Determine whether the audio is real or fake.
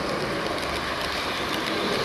real